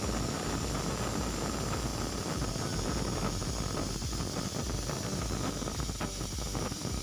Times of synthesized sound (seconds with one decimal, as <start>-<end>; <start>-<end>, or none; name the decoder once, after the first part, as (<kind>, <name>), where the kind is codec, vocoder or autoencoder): none